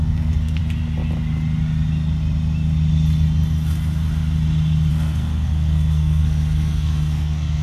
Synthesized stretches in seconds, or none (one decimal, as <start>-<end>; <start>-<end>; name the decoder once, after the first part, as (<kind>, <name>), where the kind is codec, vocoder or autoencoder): 0.0-0.6 (codec, SNAC); 4.9-7.6